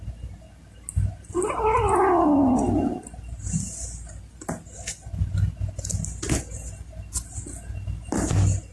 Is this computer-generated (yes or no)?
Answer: no